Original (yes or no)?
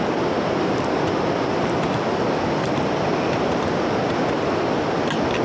yes